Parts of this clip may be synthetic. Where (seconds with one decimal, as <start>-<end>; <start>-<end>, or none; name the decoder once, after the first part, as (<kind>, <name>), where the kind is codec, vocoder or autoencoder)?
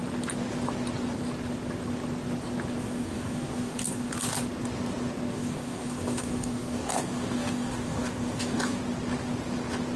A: 2.8-4.1 (codec, DAC); 5.3-8.8